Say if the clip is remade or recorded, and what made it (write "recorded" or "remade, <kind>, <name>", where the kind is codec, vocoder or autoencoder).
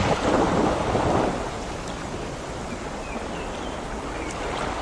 recorded